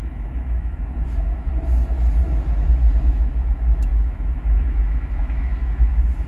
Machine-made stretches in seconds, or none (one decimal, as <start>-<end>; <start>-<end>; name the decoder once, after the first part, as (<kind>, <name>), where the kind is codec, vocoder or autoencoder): 0.0-1.5 (autoencoder, DAC-VAE); 3.0-6.3